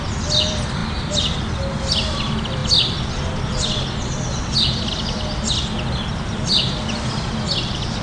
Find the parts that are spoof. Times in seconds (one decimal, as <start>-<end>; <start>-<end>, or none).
none